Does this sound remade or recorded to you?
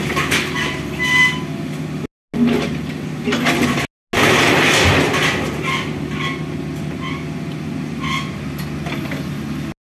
recorded